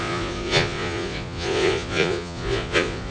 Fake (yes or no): yes